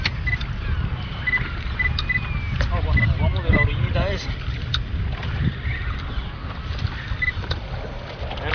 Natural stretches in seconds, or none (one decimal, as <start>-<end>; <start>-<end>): 0.0-8.5